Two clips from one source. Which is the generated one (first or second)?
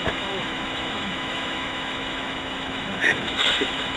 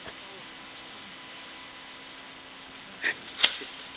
first